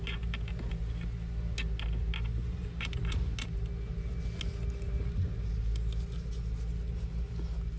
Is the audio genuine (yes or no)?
yes